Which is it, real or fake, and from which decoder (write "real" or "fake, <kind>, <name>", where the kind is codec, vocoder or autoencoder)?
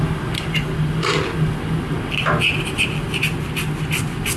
real